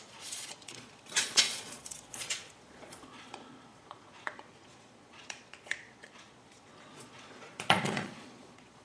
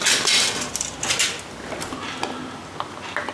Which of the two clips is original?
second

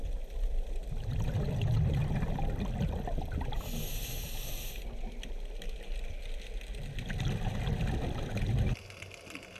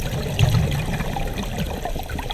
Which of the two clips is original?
first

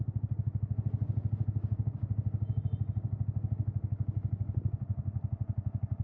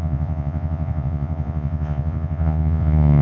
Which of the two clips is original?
first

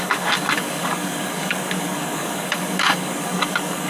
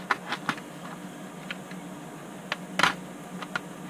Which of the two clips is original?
second